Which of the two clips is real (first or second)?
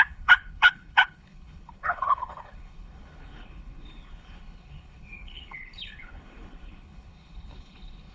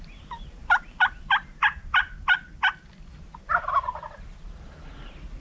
second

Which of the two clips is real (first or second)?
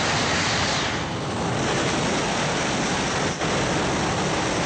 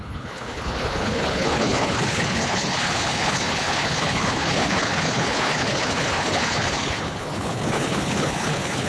first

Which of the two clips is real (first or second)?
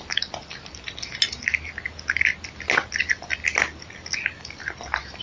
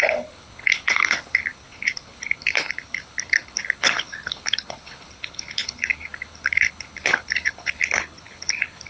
first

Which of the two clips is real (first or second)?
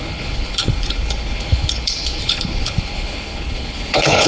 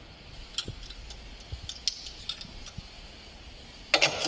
second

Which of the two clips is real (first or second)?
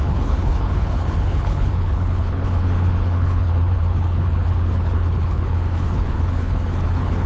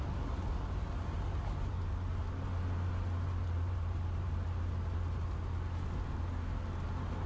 second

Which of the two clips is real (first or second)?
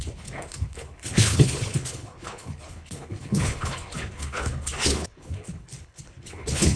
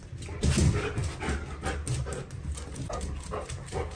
second